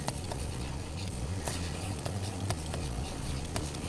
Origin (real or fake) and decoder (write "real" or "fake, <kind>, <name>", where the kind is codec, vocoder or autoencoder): fake, vocoder, Vocos